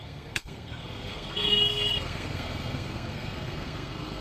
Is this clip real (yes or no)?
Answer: no